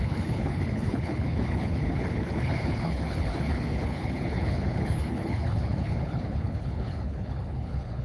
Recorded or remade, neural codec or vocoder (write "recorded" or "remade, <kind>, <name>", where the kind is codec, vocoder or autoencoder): remade, codec, HILCodec